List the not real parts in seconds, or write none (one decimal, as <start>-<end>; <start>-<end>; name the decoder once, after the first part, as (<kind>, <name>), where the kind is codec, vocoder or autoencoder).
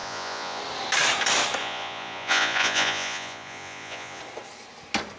0.0-0.6 (vocoder, Vocos); 1.6-4.2